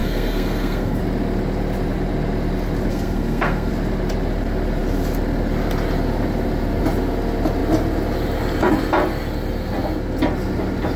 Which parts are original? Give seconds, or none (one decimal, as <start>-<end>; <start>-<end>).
1.0-2.9; 3.7-11.0